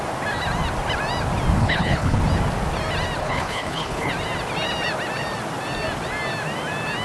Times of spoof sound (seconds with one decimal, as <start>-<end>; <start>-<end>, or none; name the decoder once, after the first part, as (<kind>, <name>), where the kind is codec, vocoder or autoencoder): 1.6-2.2 (codec, HILCodec); 3.2-4.1